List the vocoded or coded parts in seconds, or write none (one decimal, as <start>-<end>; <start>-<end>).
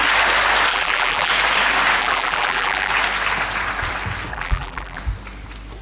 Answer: 0.7-1.3; 2.0-2.9; 4.3-5.0